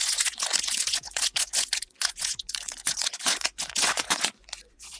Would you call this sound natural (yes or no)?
no